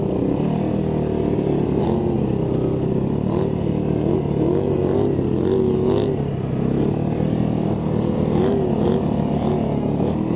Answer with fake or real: real